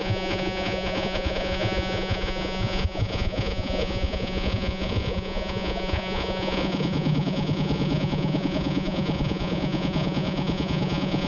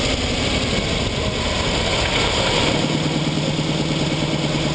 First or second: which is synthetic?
first